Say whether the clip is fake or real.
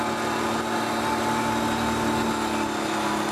real